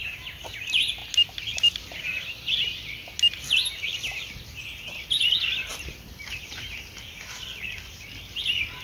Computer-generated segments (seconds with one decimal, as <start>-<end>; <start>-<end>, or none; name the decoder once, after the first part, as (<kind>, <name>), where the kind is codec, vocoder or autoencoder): 5.7-7.7 (vocoder, BigVGAN v2)